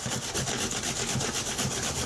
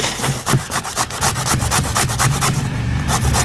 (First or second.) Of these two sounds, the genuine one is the first